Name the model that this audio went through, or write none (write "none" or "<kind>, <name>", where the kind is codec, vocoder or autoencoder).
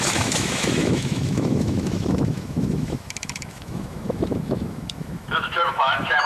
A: autoencoder, DAC-VAE